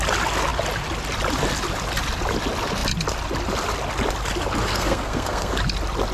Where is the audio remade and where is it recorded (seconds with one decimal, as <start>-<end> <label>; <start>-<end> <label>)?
0.0-4.7 recorded; 4.7-5.5 remade; 5.5-6.1 recorded